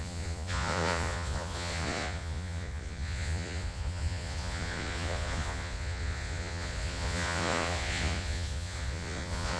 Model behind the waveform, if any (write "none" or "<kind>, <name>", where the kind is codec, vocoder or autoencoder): vocoder, Vocos